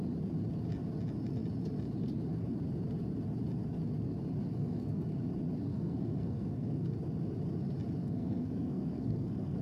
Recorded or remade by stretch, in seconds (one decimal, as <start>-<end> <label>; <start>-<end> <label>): 0.0-4.5 recorded; 4.5-5.3 remade; 5.3-5.7 recorded; 5.7-6.9 remade; 6.9-8.0 recorded; 8.0-9.6 remade